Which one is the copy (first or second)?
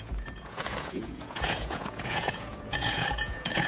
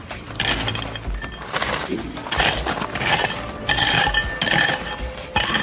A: first